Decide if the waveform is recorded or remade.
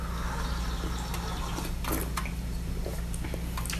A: recorded